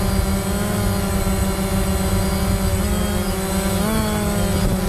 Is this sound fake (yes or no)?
no